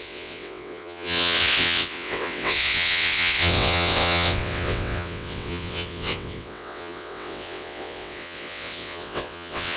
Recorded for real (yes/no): no